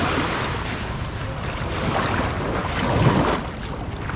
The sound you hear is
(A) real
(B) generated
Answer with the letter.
A